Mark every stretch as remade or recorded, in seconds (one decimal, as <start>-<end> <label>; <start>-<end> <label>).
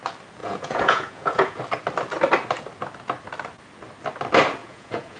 0.0-0.4 recorded; 0.4-1.6 remade; 1.6-4.6 recorded; 4.6-5.2 remade